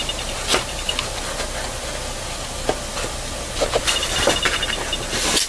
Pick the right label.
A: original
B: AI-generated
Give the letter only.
A